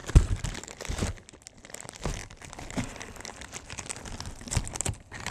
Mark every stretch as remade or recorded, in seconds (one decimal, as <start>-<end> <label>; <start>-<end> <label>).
0.0-1.2 remade; 1.2-5.3 recorded